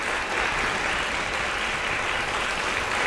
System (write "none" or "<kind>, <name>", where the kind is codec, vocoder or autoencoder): none